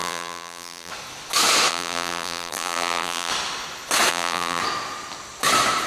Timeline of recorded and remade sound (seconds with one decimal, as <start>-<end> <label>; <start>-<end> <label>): 0.0-0.9 remade; 0.9-1.7 recorded; 1.7-3.3 remade; 3.3-4.1 recorded; 4.1-4.6 remade; 4.6-5.9 recorded